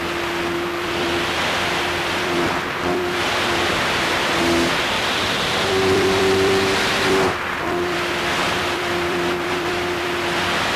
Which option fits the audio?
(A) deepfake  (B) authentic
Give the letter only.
A